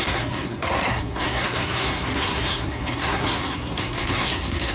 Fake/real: fake